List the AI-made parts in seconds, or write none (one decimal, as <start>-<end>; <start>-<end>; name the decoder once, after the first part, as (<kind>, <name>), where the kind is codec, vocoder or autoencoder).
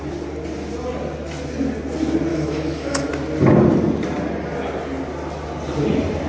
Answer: 2.3-3.1 (autoencoder, DAC-VAE)